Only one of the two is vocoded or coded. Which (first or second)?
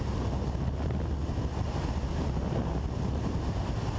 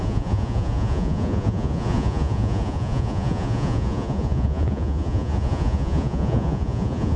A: second